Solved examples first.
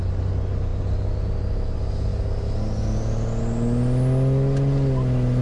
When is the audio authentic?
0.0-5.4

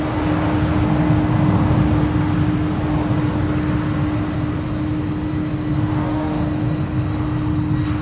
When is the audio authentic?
0.0-5.9; 6.4-8.0

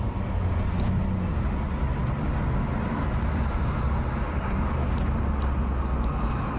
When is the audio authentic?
0.0-6.6

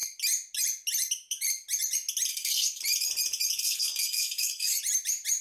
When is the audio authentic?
0.0-2.3; 2.8-3.6; 4.8-5.4

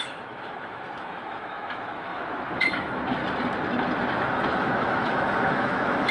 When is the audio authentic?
3.2-4.1

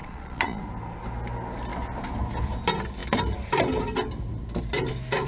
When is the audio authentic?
0.6-5.3

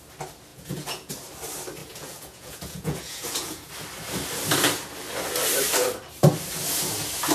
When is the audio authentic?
0.0-0.5; 1.1-1.8; 3.7-7.3